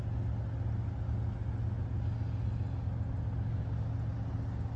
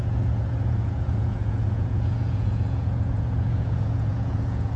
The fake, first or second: second